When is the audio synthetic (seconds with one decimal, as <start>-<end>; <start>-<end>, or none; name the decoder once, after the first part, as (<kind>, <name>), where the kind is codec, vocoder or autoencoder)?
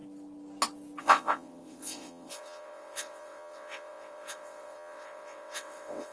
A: 1.0-6.1 (vocoder, WaveNeXt)